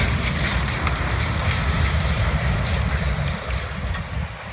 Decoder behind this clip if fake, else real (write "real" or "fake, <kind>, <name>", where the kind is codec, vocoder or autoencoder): real